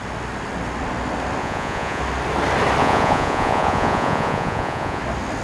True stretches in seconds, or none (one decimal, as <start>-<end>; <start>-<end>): 0.0-1.4; 2.0-2.8; 5.0-5.4